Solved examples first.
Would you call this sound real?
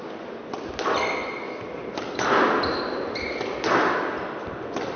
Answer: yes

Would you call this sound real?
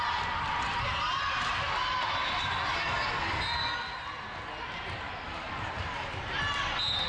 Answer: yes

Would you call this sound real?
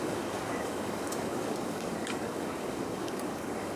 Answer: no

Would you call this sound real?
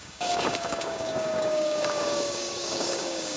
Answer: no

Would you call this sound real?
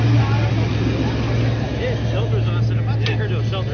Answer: yes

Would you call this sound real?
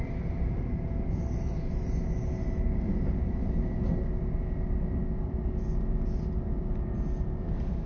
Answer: yes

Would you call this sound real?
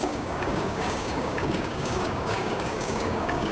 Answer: no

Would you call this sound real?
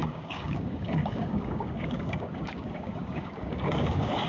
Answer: no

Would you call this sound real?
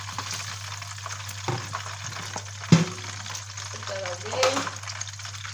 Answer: yes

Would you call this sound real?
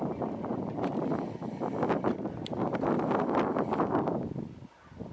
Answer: yes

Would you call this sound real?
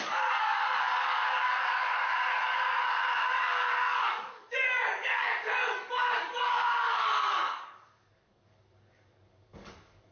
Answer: no